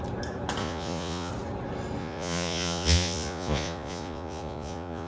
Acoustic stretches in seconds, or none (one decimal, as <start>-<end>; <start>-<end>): 0.0-0.6; 1.3-2.0